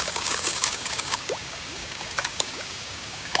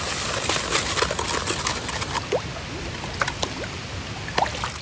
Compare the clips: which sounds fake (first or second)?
first